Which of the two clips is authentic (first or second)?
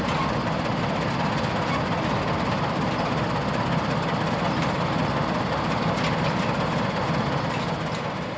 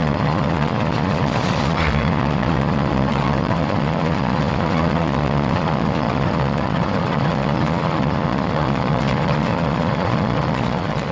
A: first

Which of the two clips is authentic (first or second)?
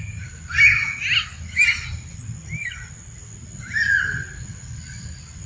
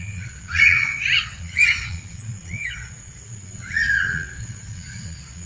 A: first